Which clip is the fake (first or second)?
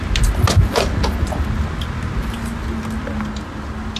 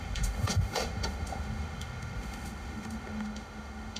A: second